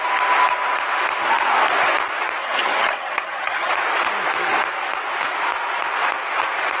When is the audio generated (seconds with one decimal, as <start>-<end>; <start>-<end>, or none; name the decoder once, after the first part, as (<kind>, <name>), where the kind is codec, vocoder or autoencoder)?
2.4-3.7 (vocoder, HiFi-GAN)